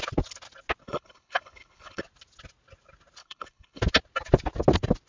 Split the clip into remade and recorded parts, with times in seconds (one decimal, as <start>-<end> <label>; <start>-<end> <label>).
0.0-0.8 recorded; 0.8-2.0 remade; 2.0-3.2 recorded; 3.2-3.8 remade; 3.8-5.1 recorded